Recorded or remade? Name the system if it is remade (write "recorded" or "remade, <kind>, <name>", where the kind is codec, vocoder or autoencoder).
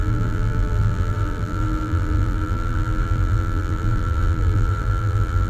remade, vocoder, BigVGAN v2